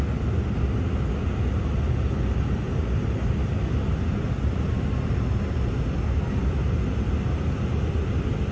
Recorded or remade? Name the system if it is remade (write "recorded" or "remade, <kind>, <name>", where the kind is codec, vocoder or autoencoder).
recorded